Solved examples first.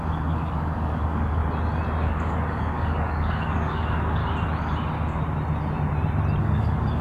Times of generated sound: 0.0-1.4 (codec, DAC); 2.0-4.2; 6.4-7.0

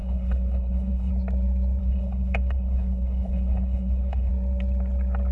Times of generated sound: 0.0-1.1 (codec, HILCodec); 1.8-4.3

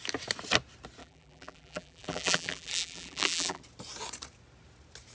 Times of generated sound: 1.0-3.6 (vocoder, BigVGAN v2)

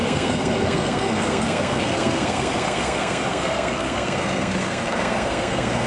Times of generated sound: 0.0-5.9 (codec, SNAC)

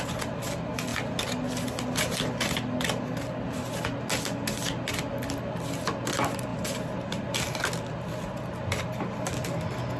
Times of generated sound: none

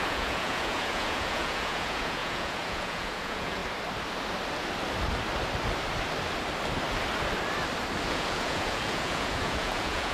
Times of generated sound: 0.0-3.6 (vocoder, Vocos); 8.1-10.1